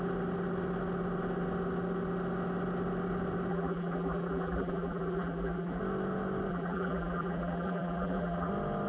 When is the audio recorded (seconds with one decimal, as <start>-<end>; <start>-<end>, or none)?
0.0-3.5; 5.8-6.5; 8.5-8.9